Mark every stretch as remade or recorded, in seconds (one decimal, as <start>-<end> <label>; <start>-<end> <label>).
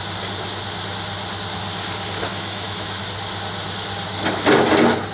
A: 0.0-2.3 recorded; 2.3-3.0 remade; 3.0-5.1 recorded